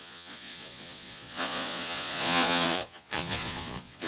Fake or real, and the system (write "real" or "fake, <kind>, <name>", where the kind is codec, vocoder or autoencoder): fake, vocoder, Vocos